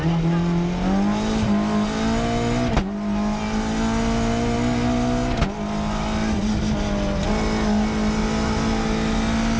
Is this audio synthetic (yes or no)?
no